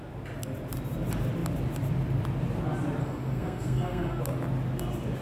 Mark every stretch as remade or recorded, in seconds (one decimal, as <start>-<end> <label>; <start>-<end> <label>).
0.0-3.0 recorded; 3.0-4.2 remade; 4.2-5.2 recorded